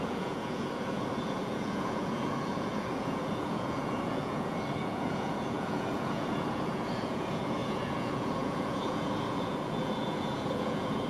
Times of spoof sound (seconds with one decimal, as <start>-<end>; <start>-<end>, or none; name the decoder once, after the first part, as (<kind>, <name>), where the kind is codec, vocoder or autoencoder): 0.0-11.1 (vocoder, Vocos)